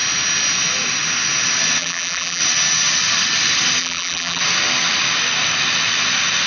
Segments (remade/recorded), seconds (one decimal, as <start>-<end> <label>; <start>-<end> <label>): 0.0-1.8 recorded; 1.8-2.4 remade; 2.4-3.8 recorded; 3.8-4.4 remade; 4.4-6.5 recorded

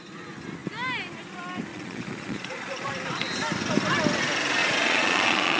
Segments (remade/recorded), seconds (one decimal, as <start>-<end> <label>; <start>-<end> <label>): 0.0-1.7 recorded; 1.7-2.9 remade; 2.9-4.6 recorded; 4.6-5.6 remade

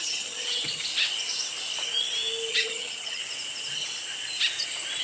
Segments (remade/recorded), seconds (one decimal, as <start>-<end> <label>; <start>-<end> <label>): 0.0-0.9 remade; 0.9-2.5 recorded; 2.5-3.2 remade; 3.2-5.0 recorded

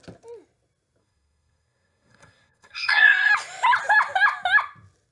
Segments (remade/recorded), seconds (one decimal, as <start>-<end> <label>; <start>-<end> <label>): 0.0-1.0 recorded; 1.0-3.3 remade; 3.3-5.1 recorded

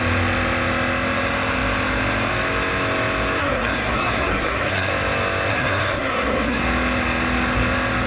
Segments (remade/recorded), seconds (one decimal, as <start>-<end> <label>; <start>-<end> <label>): 0.0-3.4 recorded; 3.4-4.9 remade; 4.9-5.5 recorded; 5.5-6.6 remade; 6.6-8.1 recorded

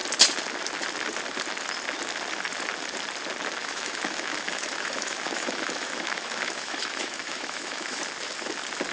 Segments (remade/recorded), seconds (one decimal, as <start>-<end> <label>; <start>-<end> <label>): 0.0-3.6 recorded; 3.6-8.0 remade; 8.0-8.9 recorded

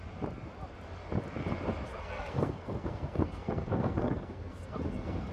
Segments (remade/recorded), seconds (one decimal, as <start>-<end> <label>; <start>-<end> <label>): 0.0-1.9 recorded; 1.9-5.3 remade